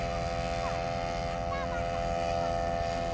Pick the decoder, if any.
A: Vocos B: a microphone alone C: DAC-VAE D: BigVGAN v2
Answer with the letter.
B